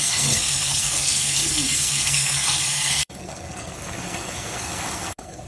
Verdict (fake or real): fake